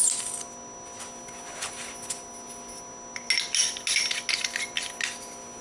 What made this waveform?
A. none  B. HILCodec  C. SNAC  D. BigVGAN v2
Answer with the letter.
A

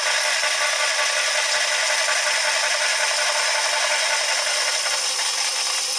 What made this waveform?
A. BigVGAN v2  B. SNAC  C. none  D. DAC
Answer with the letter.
C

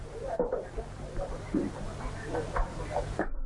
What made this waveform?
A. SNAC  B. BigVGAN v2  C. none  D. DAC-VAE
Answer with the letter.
B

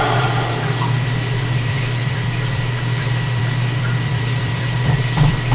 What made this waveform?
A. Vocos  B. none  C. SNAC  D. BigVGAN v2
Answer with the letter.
D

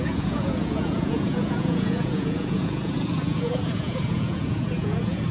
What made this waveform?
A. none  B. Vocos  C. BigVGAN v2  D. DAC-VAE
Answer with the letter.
B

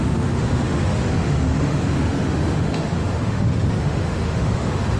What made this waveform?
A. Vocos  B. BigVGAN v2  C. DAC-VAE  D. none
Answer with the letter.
C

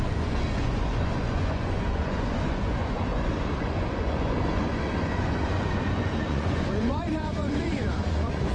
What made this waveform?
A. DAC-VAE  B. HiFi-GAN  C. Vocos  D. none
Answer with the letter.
C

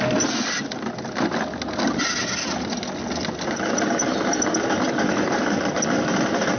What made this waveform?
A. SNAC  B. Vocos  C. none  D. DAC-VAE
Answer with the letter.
C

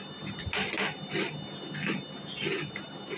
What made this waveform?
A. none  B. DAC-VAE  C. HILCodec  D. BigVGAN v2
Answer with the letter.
A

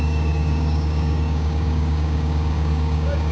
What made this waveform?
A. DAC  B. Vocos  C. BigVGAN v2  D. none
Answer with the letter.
A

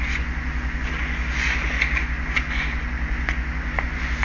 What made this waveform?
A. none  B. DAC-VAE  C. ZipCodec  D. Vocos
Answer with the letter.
D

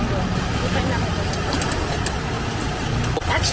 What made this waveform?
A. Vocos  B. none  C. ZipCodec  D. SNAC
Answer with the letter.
B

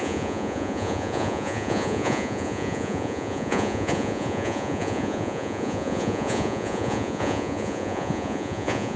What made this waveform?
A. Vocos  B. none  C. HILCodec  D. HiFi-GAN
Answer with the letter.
A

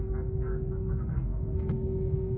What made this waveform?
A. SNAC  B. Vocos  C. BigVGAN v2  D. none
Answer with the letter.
A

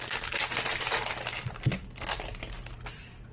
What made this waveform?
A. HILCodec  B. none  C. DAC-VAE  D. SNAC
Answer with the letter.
B